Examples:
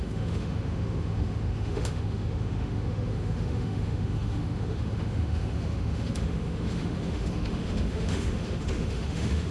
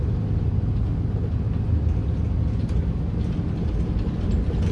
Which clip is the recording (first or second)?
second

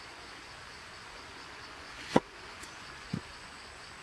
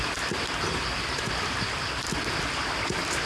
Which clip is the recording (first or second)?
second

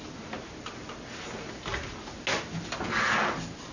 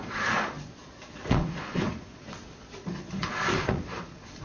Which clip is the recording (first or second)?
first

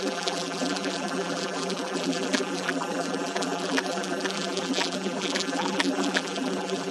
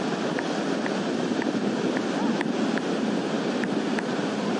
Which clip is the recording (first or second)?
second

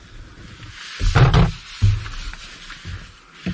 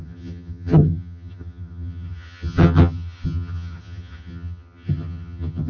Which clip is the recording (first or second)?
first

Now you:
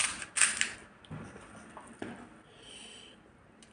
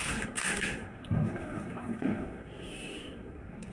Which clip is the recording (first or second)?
first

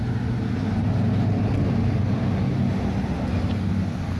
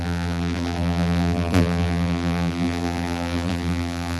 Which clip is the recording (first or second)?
first